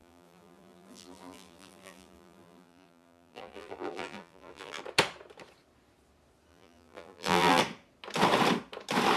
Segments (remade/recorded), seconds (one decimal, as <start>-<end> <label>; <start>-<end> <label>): 0.0-4.8 remade; 4.8-6.5 recorded; 6.5-7.6 remade; 7.6-9.2 recorded